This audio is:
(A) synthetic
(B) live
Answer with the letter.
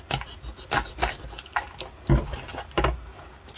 B